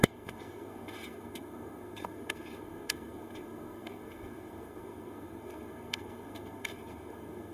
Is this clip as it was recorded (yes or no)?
no